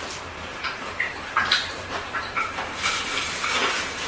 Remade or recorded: remade